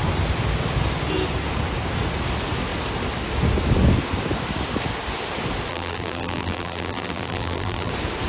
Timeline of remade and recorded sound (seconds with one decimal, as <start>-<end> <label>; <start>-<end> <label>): 0.0-5.7 recorded; 5.7-7.9 remade; 7.9-8.3 recorded